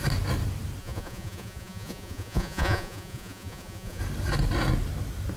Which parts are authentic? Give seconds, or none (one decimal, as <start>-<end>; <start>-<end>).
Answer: 0.0-0.8; 4.0-5.4